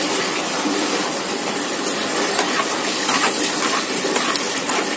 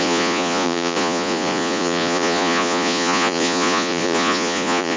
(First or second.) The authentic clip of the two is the first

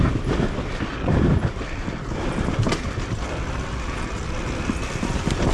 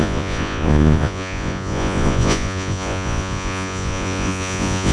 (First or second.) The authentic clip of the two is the first